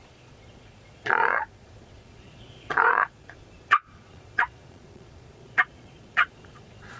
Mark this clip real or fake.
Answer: fake